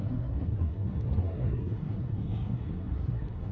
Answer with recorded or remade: remade